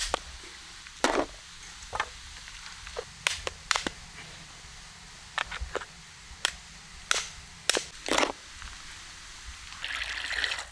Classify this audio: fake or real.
real